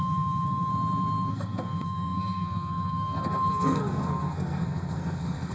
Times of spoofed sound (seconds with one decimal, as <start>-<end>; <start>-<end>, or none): 0.0-0.7; 1.3-5.5

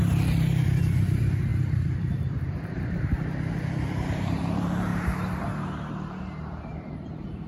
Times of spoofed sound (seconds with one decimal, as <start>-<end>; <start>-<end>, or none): 0.0-4.9; 5.9-7.5

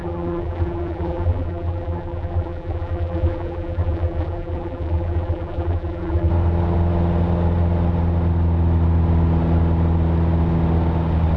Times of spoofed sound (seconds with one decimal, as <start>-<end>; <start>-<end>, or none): 0.0-6.3

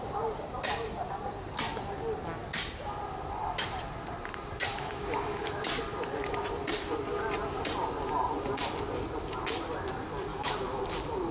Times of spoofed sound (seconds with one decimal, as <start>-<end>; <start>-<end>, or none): 4.7-5.7; 10.3-10.8

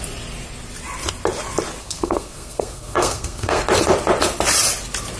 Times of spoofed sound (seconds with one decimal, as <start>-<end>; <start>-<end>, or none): 1.8-3.6